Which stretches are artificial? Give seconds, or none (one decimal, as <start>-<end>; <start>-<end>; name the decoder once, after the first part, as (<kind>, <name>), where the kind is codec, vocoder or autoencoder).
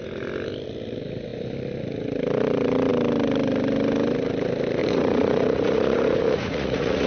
4.8-7.1 (vocoder, Vocos)